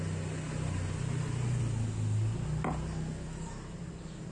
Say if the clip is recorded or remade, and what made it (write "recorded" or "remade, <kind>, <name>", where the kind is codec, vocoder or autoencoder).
recorded